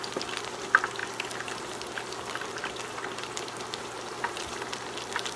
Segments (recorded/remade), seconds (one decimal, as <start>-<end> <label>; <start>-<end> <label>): 0.0-5.4 recorded